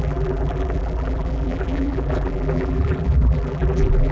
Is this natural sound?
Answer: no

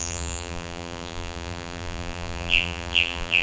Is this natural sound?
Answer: no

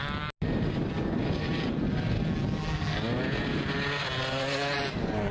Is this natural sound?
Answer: yes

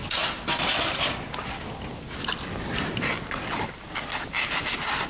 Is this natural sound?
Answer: yes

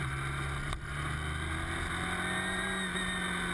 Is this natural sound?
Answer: yes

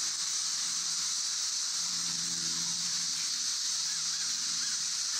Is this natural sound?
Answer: no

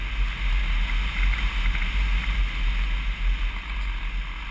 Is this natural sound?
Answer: yes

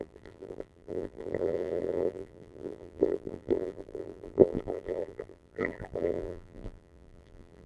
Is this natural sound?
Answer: no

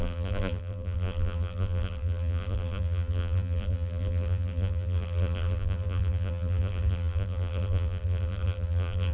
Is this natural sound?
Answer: no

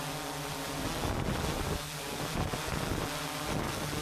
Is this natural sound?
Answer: yes